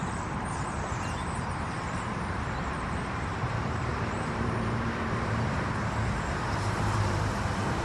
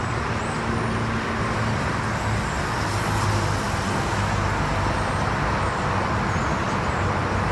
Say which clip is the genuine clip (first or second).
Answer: second